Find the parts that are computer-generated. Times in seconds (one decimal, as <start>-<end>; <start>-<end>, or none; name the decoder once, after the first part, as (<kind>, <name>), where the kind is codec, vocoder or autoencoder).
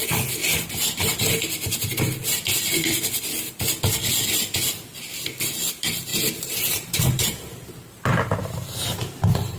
0.4-1.4 (vocoder, BigVGAN v2); 6.1-9.6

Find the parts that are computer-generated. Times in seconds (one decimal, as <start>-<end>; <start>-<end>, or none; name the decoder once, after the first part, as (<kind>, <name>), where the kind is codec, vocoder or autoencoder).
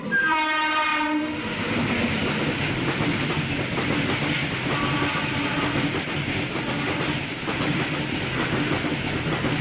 none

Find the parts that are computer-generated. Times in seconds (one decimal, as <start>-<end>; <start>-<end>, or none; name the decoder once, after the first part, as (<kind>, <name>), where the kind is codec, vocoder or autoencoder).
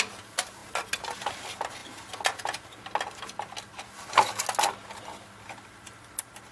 0.0-0.6 (vocoder, BigVGAN v2); 1.3-1.8; 5.4-6.5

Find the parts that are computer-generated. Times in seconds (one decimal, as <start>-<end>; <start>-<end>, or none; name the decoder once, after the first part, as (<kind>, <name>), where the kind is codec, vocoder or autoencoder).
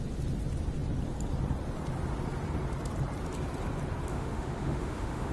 4.1-5.3 (autoencoder, DAC-VAE)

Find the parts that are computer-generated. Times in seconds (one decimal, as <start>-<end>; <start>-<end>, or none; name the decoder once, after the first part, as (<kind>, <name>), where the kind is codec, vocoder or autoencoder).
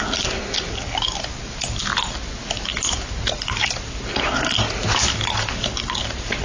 none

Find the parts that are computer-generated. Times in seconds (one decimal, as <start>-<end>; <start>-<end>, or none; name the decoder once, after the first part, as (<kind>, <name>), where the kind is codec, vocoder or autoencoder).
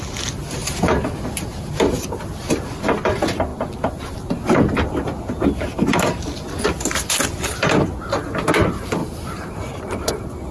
0.6-1.1 (vocoder, BigVGAN v2); 9.0-10.1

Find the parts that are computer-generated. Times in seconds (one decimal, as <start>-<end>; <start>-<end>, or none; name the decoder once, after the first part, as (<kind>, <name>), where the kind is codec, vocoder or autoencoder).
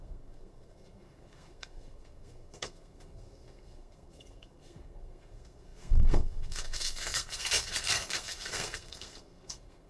0.0-9.9 (codec, SNAC)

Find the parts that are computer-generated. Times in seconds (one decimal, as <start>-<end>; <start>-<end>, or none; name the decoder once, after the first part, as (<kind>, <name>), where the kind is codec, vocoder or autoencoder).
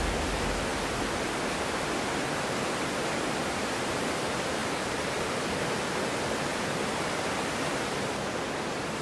4.6-5.6 (vocoder, BigVGAN v2); 6.5-7.3